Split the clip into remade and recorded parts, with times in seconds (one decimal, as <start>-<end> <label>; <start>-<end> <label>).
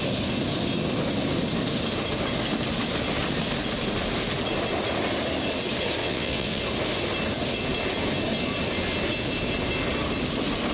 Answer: 0.0-6.0 recorded; 6.0-6.6 remade; 6.6-10.7 recorded